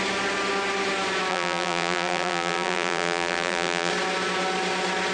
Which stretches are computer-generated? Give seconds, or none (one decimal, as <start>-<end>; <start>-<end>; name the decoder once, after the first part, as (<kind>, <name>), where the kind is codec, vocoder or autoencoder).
1.3-3.9 (vocoder, BigVGAN v2)